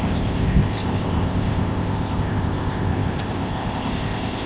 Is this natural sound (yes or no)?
no